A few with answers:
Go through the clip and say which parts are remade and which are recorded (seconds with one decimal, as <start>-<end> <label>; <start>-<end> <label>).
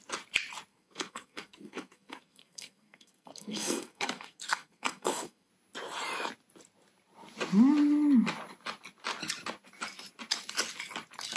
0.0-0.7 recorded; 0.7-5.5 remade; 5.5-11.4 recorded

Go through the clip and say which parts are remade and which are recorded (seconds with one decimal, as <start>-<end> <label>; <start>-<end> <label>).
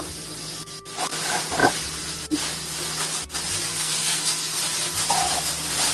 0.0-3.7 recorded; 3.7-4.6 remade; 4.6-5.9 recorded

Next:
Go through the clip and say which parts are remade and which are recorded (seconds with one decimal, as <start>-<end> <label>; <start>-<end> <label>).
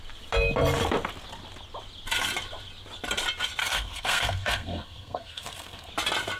0.0-3.6 recorded; 3.6-5.9 remade; 5.9-6.4 recorded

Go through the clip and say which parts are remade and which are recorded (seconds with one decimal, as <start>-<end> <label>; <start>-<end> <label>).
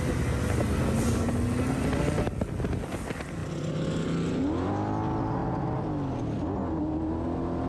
0.0-7.7 recorded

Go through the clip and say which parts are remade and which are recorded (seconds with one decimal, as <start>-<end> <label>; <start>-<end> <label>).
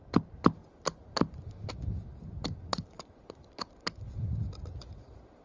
0.0-5.4 recorded